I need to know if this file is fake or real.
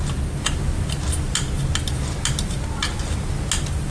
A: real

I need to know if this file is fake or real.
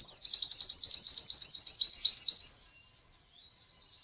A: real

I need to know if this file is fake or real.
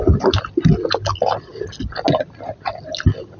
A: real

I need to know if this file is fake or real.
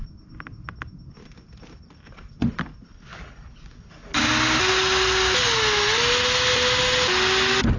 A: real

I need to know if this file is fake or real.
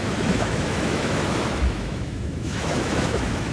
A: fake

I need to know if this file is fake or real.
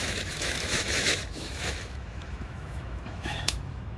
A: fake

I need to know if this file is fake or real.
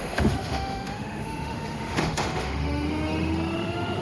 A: fake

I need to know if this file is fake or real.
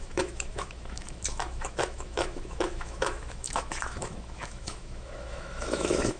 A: fake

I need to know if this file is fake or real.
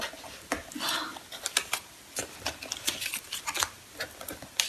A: real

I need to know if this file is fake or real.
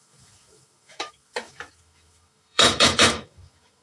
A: fake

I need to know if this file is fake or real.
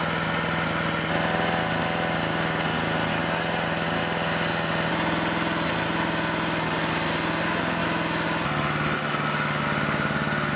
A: real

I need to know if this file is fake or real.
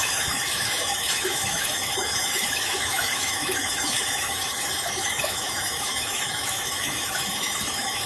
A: fake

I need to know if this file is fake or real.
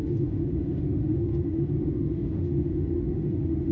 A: fake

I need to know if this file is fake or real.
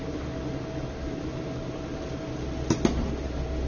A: real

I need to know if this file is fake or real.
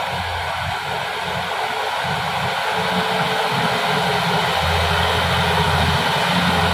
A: real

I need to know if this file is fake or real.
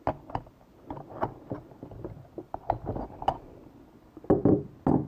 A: real